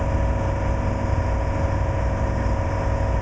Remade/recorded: recorded